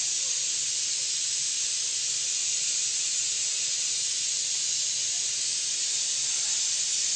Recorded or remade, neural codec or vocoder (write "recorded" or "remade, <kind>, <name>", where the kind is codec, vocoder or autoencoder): recorded